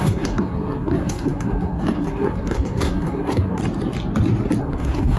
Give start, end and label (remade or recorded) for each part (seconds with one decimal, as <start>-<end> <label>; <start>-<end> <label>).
0.0-3.6 remade; 3.6-4.6 recorded; 4.6-5.2 remade